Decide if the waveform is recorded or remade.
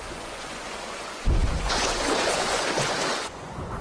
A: remade